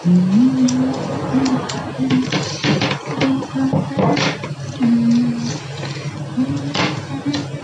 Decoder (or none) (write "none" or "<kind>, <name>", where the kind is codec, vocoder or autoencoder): none